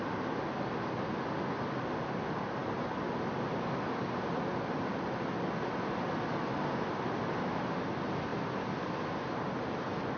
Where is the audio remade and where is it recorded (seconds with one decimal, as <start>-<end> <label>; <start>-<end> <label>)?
0.0-10.2 recorded